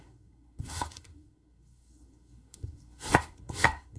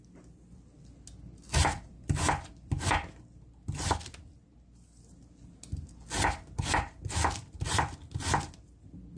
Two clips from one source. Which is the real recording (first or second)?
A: second